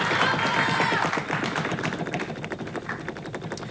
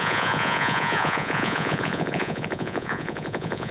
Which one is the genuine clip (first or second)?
first